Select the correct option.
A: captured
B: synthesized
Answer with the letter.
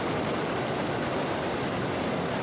A